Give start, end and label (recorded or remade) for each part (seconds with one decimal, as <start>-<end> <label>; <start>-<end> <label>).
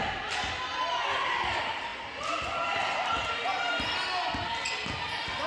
0.0-5.5 recorded